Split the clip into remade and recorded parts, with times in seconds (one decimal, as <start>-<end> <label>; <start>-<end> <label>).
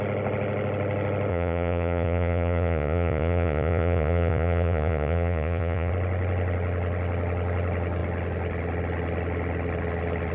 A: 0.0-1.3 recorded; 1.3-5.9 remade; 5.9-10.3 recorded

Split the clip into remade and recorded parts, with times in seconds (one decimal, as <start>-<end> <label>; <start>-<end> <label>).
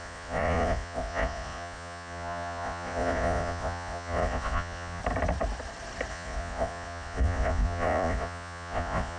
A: 0.0-5.0 remade; 5.0-6.1 recorded; 6.1-9.2 remade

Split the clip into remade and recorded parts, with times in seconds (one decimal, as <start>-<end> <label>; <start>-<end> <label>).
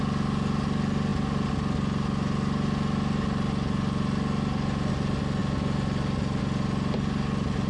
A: 0.0-7.7 recorded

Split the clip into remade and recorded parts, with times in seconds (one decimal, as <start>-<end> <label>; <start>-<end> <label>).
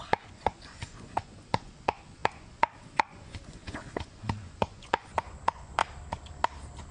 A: 0.0-5.8 remade; 5.8-6.9 recorded